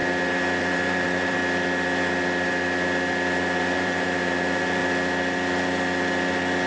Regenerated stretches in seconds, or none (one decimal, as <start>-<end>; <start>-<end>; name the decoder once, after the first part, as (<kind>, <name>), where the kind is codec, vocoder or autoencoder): 0.6-1.4 (vocoder, BigVGAN v2); 3.6-4.8